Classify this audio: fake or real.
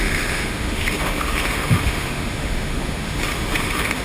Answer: fake